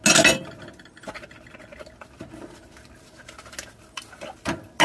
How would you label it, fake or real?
real